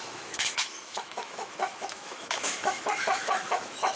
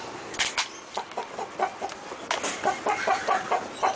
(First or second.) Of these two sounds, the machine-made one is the first